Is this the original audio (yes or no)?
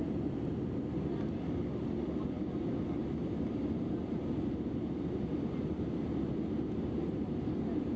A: yes